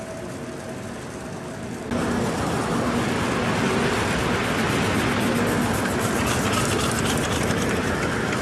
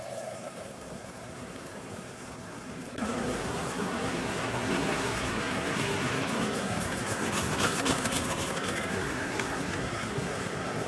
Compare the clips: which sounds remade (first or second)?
second